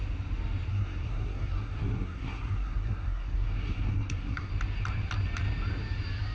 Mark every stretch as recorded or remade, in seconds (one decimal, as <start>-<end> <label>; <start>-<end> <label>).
0.0-0.7 recorded; 0.7-4.5 remade; 4.5-6.3 recorded